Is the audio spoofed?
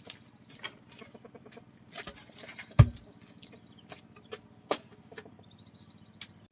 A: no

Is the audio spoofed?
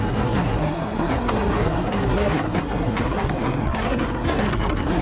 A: yes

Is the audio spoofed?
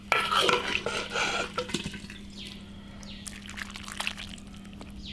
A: no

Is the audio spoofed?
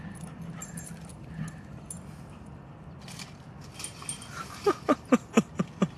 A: no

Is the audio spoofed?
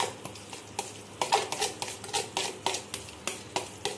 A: no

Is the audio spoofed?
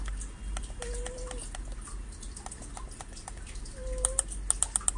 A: no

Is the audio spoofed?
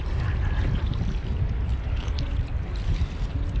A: no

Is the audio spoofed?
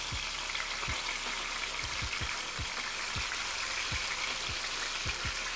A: no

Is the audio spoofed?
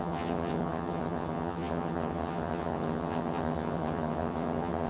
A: yes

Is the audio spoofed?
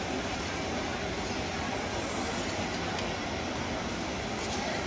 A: no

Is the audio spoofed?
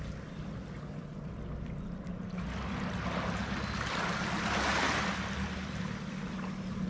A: no